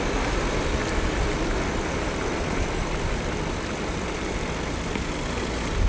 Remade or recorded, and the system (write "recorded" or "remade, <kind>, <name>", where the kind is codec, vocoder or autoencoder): recorded